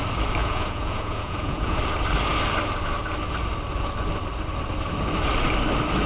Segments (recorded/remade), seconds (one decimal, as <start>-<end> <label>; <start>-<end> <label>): 0.0-0.4 recorded; 0.4-1.8 remade; 1.8-6.1 recorded